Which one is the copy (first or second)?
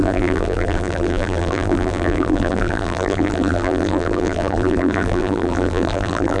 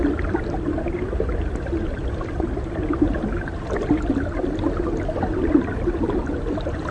first